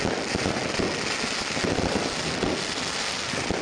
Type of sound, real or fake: real